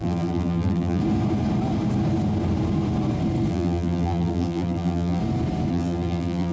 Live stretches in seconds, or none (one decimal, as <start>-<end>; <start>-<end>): 1.0-3.5; 5.2-5.7